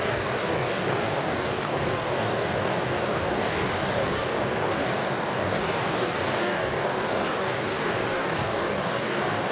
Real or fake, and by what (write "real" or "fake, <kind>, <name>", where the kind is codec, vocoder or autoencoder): fake, codec, DAC